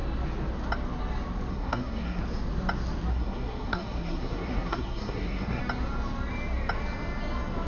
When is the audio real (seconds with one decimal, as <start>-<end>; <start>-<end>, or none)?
0.0-1.5; 2.2-3.1; 5.6-7.7